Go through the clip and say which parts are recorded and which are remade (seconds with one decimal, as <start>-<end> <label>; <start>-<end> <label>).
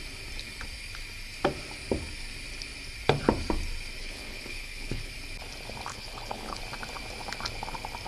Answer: 0.0-4.0 recorded; 4.0-5.1 remade; 5.1-5.9 recorded; 5.9-6.6 remade; 6.6-8.1 recorded